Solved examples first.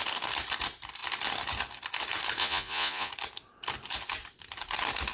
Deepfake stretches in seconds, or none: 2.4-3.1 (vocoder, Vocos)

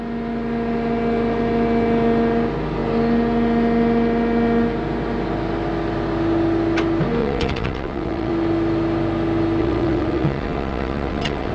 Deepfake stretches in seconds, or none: 7.2-8.3 (vocoder, WaveNeXt); 9.6-11.5

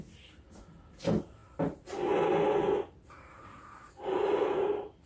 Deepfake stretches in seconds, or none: none

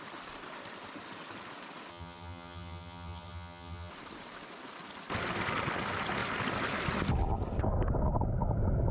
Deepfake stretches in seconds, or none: 1.9-3.9 (vocoder, HiFi-GAN)

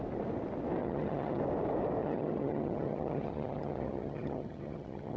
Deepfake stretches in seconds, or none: 0.8-1.4 (vocoder, HiFi-GAN); 2.0-5.2

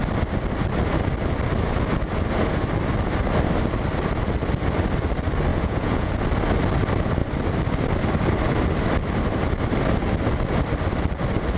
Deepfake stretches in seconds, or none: 5.5-6.2 (vocoder, Vocos)

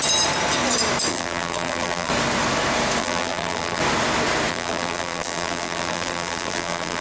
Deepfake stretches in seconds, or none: 1.1-2.1 (vocoder, BigVGAN v2); 3.0-3.8; 4.5-7.0

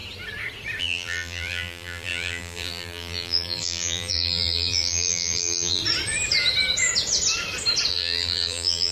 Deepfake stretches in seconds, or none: 0.8-5.8 (vocoder, BigVGAN v2); 7.9-8.9